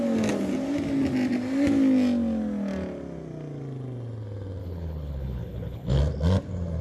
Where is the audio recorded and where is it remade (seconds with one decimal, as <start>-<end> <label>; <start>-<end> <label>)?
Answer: 0.0-4.6 recorded; 4.6-6.0 remade; 6.0-6.8 recorded